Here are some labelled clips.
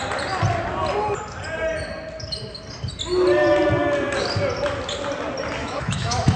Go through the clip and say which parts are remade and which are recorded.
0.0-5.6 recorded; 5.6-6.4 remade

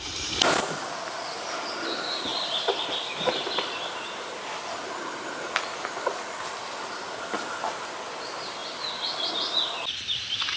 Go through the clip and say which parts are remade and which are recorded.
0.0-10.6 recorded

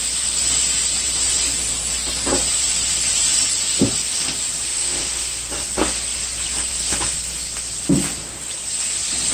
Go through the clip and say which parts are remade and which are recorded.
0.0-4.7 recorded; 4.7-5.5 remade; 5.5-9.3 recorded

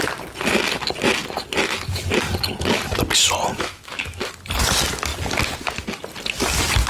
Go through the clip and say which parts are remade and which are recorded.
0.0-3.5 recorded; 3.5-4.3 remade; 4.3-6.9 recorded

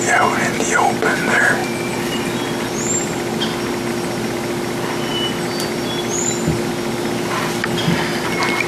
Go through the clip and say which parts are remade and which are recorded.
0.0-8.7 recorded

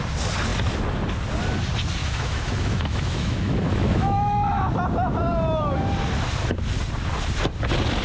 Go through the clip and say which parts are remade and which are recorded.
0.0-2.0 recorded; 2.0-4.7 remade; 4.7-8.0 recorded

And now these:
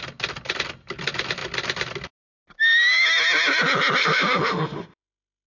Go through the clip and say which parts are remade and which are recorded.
0.0-4.0 recorded; 4.0-5.5 remade